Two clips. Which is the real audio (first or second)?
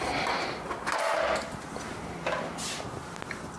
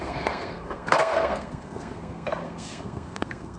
first